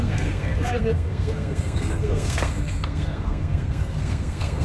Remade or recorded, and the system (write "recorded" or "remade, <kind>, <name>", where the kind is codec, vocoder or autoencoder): remade, codec, SNAC